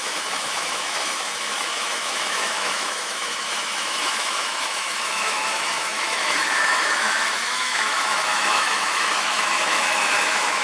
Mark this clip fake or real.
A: fake